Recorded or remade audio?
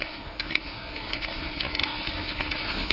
remade